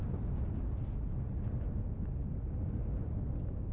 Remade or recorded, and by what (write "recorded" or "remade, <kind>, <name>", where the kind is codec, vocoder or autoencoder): recorded